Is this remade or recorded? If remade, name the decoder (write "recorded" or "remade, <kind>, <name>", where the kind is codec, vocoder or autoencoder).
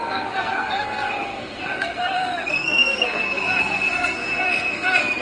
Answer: remade, codec, SNAC